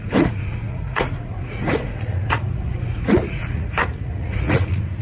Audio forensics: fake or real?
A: fake